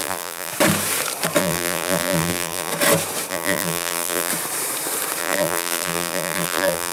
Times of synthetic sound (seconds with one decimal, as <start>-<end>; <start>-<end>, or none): 0.0-0.5; 1.4-2.7; 3.3-4.3; 5.2-6.9